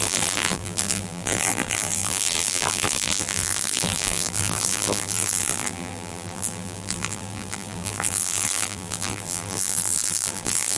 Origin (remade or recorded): remade